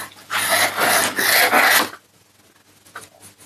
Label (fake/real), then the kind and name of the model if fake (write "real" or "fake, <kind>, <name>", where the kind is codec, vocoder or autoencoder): real